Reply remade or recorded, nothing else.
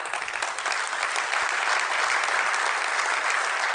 remade